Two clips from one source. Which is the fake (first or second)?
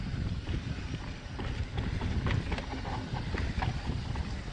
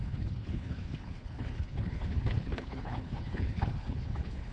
second